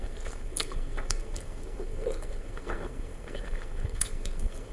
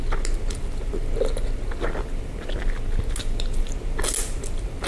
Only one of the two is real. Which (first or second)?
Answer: second